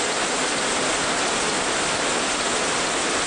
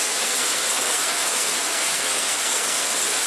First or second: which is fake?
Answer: second